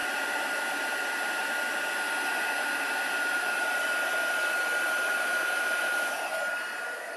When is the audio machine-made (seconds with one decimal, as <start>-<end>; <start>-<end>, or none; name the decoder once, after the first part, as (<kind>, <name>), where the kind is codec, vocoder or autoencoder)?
0.0-7.2 (vocoder, BigVGAN v2)

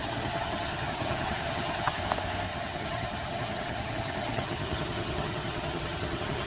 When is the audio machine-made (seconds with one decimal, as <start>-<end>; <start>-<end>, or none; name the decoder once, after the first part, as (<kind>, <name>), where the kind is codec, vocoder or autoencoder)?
0.0-2.0 (vocoder, HiFi-GAN); 2.5-6.5

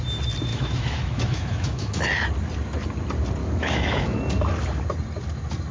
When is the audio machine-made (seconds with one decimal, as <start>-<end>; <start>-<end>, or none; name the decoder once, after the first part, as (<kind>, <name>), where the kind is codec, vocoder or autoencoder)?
0.5-2.0 (autoencoder, DAC-VAE); 3.4-4.2

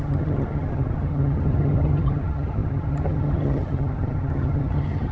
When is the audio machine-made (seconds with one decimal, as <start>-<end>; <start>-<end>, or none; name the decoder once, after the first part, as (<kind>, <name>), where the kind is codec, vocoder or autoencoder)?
0.0-5.1 (vocoder, HiFi-GAN)

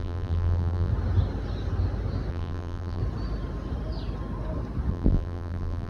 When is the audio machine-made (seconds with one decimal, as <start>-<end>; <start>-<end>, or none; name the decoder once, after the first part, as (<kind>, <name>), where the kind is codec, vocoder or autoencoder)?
0.0-0.9 (vocoder, BigVGAN v2); 2.3-3.0; 4.9-5.9

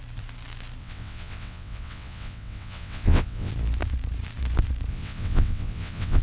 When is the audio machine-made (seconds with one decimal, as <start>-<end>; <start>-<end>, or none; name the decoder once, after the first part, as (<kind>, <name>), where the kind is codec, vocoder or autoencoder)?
0.8-3.5 (vocoder, WaveNeXt); 4.9-6.2

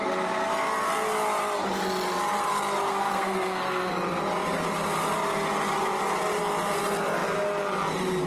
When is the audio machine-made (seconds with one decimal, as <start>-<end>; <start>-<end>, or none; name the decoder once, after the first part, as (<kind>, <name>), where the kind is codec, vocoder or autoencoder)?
0.0-0.5 (codec, SNAC); 2.9-3.9

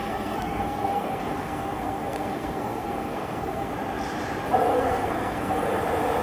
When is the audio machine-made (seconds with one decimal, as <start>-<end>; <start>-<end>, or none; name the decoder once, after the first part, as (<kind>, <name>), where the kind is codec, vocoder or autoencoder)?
0.0-3.7 (codec, SNAC); 4.7-5.8